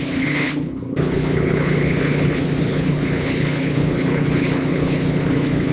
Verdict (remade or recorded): remade